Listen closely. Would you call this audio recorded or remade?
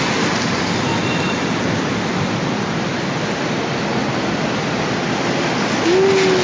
recorded